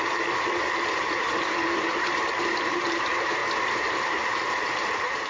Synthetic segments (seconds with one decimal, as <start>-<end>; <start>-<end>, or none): 0.0-5.3